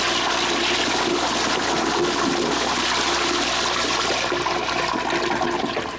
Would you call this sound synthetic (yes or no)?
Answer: no